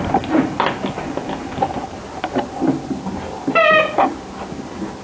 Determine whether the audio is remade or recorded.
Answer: recorded